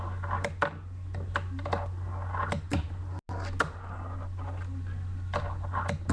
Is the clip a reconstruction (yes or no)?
no